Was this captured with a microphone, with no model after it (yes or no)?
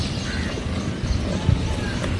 yes